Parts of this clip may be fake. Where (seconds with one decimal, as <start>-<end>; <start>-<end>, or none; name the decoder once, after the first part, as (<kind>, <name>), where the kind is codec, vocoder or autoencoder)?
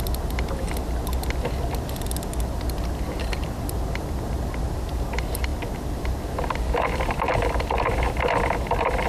none